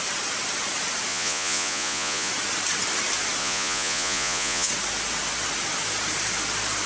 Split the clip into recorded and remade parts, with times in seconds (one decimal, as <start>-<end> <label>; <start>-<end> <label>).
0.0-1.1 recorded; 1.1-2.3 remade; 2.3-3.4 recorded; 3.4-4.7 remade; 4.7-6.9 recorded